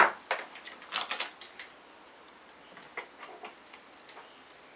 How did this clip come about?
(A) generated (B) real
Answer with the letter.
B